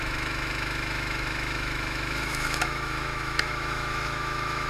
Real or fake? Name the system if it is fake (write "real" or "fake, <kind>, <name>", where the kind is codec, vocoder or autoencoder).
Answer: fake, autoencoder, DAC-VAE